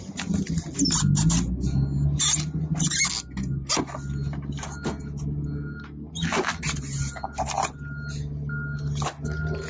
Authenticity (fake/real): real